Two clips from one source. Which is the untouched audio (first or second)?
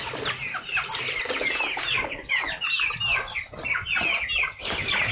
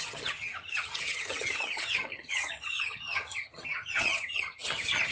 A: first